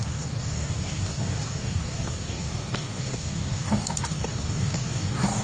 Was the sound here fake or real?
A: fake